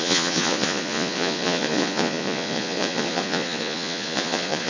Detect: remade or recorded remade